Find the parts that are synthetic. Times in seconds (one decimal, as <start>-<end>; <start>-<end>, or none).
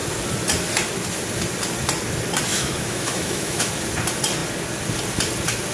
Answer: 2.5-3.7